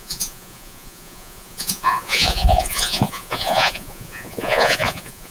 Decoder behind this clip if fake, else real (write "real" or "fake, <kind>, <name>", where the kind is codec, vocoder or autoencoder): fake, vocoder, Vocos